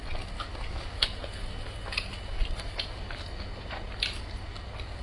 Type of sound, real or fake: real